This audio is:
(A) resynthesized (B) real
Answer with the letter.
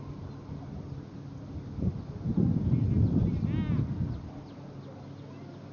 B